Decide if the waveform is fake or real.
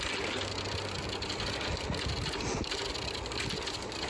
real